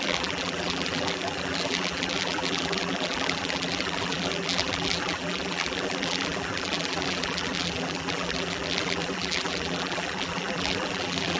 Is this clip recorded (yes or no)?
no